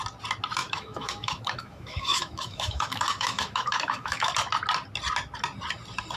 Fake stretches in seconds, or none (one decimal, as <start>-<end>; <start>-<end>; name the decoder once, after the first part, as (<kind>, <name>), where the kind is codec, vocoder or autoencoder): 0.6-4.3 (autoencoder, DAC-VAE)

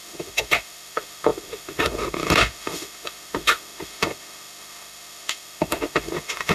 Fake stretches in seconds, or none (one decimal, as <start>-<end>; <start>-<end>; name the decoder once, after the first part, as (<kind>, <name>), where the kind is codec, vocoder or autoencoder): 0.0-6.5 (autoencoder, DAC-VAE)

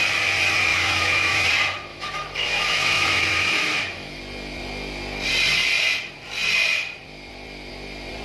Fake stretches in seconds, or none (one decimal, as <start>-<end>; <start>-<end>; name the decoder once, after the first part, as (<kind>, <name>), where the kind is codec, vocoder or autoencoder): 0.7-1.5 (autoencoder, DAC-VAE); 1.9-4.2

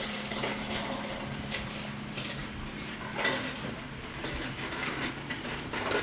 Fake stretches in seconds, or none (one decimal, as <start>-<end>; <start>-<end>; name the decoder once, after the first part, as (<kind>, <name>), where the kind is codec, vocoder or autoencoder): none

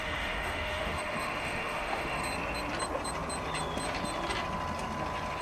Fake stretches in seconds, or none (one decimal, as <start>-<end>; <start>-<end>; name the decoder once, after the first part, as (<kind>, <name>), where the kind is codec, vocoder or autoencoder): 0.0-2.2 (autoencoder, DAC-VAE)

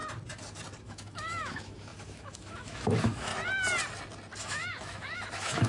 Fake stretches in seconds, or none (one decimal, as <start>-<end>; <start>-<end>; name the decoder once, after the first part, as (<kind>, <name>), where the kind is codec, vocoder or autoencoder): 0.8-3.3 (autoencoder, DAC-VAE); 4.4-5.7

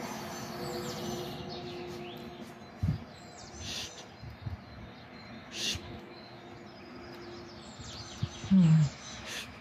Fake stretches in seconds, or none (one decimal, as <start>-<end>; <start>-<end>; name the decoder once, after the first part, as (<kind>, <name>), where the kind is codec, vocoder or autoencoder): 5.4-6.4 (autoencoder, DAC-VAE); 8.4-9.6